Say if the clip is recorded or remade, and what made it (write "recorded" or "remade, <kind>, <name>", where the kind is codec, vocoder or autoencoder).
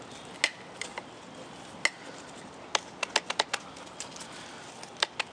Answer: recorded